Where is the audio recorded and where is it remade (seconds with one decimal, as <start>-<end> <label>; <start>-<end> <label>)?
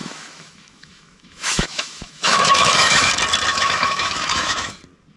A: 0.0-3.1 remade; 3.1-3.5 recorded; 3.5-4.8 remade; 4.8-5.2 recorded